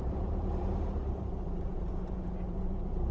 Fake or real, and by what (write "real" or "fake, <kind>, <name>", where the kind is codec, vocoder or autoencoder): fake, vocoder, BigVGAN v2